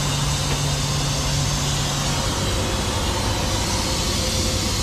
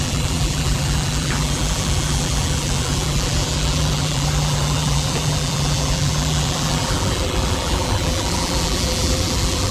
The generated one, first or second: second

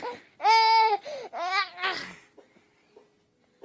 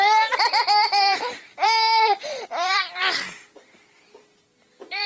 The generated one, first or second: second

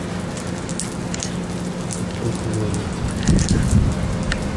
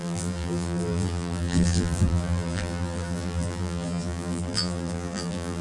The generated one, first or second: second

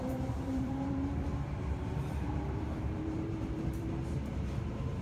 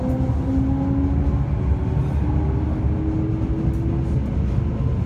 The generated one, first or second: first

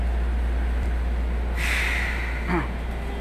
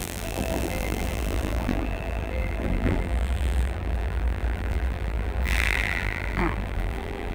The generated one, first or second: second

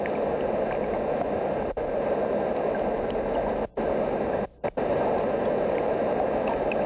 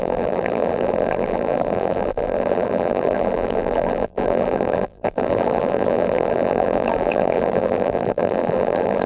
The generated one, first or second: second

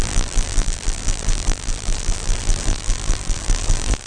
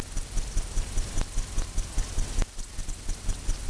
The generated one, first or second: first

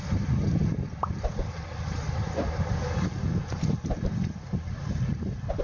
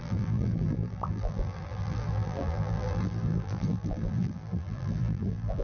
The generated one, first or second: second